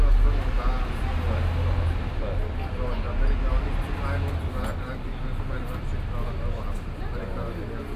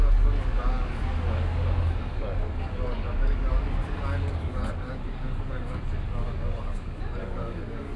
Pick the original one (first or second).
first